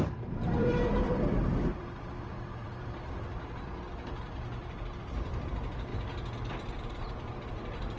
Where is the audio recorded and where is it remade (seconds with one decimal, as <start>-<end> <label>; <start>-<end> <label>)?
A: 0.0-5.9 remade; 5.9-6.5 recorded; 6.5-8.0 remade